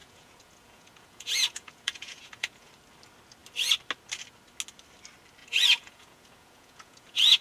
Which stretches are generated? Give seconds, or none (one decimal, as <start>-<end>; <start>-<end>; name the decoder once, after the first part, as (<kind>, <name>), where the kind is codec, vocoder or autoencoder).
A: 0.0-2.7 (vocoder, Vocos); 5.4-7.4